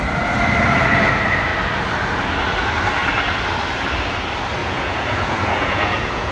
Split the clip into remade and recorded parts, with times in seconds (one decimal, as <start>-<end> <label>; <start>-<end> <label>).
0.0-4.6 recorded; 4.6-6.3 remade